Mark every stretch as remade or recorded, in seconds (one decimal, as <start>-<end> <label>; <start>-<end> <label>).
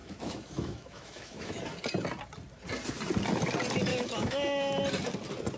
0.0-1.6 remade; 1.6-3.9 recorded; 3.9-4.8 remade; 4.8-5.6 recorded